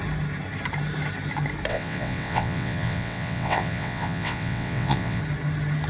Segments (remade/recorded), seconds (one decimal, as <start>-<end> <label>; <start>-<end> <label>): 0.0-1.7 recorded; 1.7-5.2 remade; 5.2-5.9 recorded

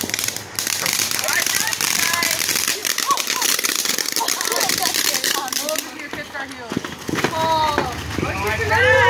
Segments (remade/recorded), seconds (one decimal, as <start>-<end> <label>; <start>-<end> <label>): 0.0-2.8 recorded; 2.8-3.9 remade; 3.9-9.1 recorded

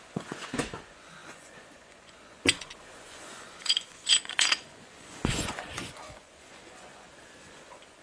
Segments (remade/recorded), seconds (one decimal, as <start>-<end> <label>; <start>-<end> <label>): 0.0-8.0 remade

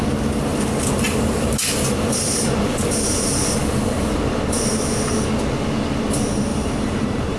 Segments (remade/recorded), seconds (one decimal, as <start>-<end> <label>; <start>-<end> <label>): 0.0-0.5 recorded; 0.5-2.9 remade; 2.9-6.5 recorded; 6.5-7.4 remade

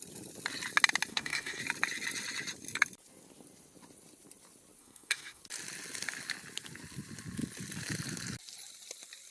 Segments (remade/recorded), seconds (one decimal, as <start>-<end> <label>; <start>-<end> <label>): 0.0-1.1 recorded; 1.1-1.6 remade; 1.6-4.8 recorded; 4.8-5.4 remade; 5.4-9.3 recorded

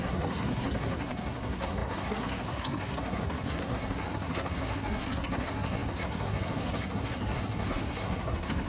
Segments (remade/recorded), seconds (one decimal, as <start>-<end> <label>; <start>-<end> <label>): 0.0-8.7 remade